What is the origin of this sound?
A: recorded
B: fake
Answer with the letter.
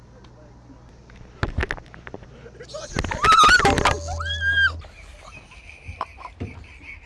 A